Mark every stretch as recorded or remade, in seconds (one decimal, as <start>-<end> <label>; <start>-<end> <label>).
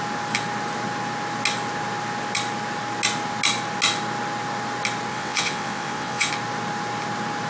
0.0-5.1 recorded; 5.1-6.3 remade; 6.3-7.5 recorded